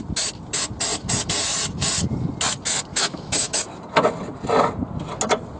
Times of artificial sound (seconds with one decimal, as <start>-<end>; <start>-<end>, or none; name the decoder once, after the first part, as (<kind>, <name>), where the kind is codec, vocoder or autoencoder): 2.9-3.5 (autoencoder, DAC-VAE)

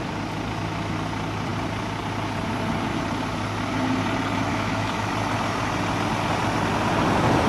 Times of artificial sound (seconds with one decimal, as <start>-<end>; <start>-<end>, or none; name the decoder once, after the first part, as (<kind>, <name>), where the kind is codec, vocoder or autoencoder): 4.5-5.1 (autoencoder, DAC-VAE)

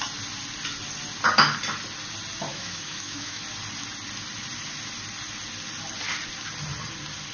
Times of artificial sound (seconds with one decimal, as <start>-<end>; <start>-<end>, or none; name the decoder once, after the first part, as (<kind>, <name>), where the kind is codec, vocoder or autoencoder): 2.5-3.4 (autoencoder, DAC-VAE)

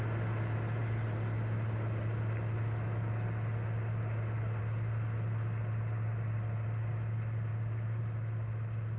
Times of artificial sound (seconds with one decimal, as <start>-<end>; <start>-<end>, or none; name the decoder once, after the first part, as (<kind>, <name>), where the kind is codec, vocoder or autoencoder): none

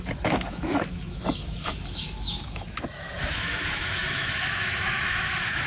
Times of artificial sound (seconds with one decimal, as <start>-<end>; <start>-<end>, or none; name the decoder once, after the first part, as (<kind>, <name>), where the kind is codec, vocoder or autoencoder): 0.0-5.7 (autoencoder, DAC-VAE)

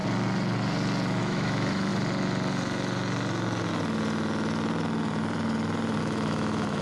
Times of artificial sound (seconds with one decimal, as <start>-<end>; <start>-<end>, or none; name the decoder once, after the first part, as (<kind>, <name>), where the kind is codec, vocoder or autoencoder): 1.2-1.9 (autoencoder, DAC-VAE); 6.0-6.8

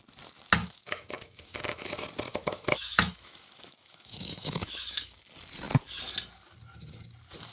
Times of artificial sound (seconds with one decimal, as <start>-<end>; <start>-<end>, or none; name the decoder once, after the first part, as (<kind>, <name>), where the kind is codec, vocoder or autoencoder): 0.6-1.9 (autoencoder, DAC-VAE); 2.3-5.2

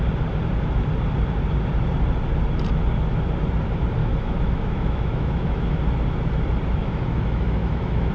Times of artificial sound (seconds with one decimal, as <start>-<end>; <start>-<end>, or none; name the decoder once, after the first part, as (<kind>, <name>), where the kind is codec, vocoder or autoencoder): 4.0-5.8 (autoencoder, DAC-VAE); 6.8-8.1